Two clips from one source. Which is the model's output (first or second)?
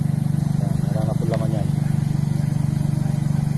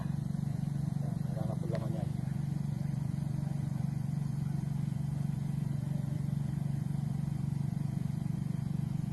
second